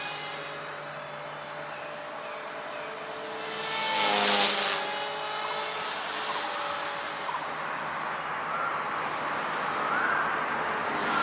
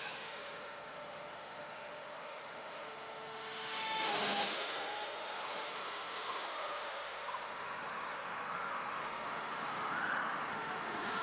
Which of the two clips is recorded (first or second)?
first